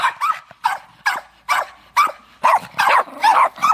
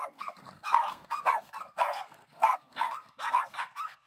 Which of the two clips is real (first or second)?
first